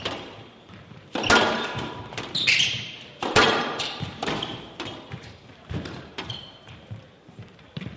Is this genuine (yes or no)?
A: no